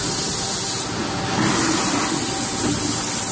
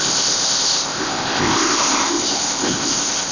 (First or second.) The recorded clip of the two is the first